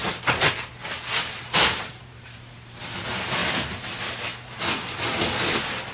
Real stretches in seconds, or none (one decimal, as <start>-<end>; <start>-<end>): 3.0-3.4; 4.7-5.9